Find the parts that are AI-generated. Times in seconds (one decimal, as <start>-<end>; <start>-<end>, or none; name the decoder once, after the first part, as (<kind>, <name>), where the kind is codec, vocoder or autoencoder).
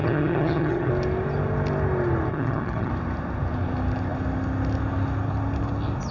0.0-0.9 (vocoder, HiFi-GAN); 2.3-2.9